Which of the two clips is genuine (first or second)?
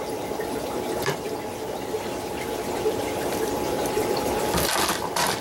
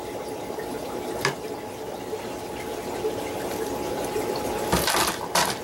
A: second